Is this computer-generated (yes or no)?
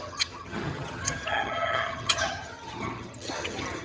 yes